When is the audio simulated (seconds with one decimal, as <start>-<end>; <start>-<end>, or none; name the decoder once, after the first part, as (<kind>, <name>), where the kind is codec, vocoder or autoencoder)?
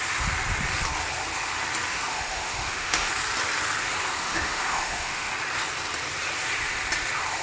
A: 1.9-3.1 (autoencoder, DAC-VAE); 4.2-5.3